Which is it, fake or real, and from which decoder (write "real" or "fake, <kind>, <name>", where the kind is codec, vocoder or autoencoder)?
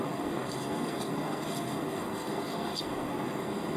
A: fake, codec, SNAC